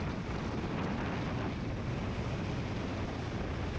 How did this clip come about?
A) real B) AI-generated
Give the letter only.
A